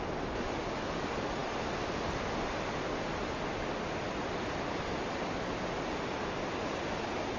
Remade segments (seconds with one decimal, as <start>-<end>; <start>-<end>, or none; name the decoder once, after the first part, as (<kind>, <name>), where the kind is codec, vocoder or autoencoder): none